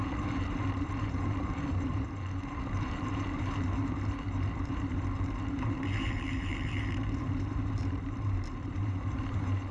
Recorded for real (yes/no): no